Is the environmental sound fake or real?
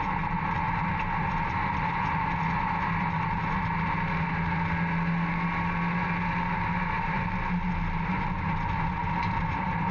real